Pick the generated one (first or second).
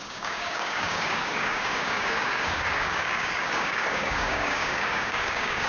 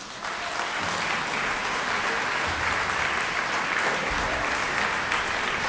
first